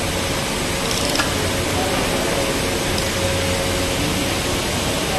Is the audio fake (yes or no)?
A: no